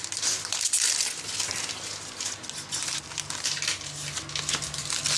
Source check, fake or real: real